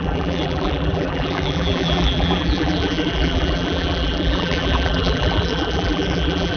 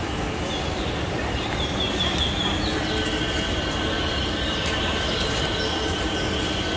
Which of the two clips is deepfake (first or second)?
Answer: first